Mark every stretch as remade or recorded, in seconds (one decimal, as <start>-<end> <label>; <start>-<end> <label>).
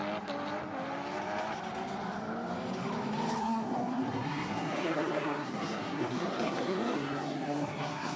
0.0-3.4 recorded; 3.4-8.2 remade